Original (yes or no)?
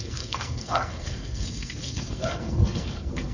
no